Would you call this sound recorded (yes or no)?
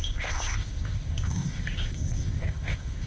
no